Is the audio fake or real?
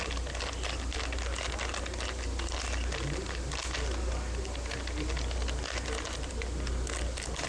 real